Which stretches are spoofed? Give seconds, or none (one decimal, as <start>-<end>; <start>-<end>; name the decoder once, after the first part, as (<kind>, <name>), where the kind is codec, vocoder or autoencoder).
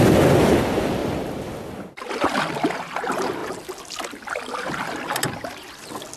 none